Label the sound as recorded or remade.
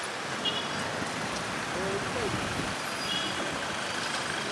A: recorded